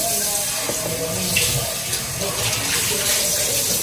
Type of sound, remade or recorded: recorded